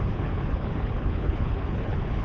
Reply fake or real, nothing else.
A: fake